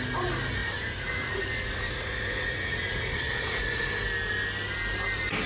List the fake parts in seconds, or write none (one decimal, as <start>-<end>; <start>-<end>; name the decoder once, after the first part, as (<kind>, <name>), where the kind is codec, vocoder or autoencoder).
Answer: 0.6-3.9 (vocoder, Vocos)